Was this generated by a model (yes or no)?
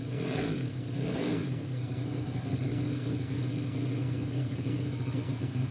yes